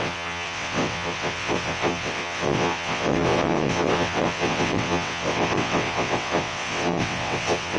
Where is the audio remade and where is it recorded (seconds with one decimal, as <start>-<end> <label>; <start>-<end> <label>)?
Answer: 0.0-7.8 remade